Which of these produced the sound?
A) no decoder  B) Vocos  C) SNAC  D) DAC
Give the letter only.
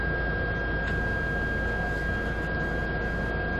A